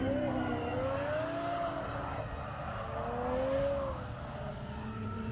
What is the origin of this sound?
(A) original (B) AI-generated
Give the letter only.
A